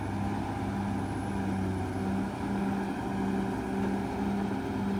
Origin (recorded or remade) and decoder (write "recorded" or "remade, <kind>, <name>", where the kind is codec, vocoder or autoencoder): recorded